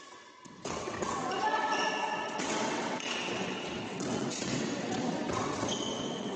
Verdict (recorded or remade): remade